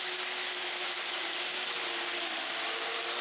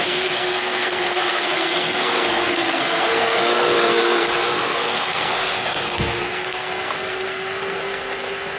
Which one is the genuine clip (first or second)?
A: first